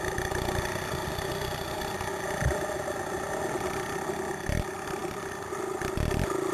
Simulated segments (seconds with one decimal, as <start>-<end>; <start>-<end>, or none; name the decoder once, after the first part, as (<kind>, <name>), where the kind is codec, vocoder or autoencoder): none